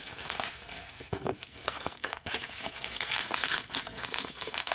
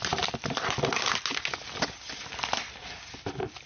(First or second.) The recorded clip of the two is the second